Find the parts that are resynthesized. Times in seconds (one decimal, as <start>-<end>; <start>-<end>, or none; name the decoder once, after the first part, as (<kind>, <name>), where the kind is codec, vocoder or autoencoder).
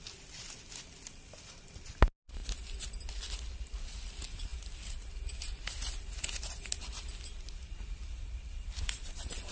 none